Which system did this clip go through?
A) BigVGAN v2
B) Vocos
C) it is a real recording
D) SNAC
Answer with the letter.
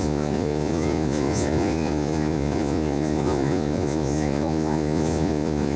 B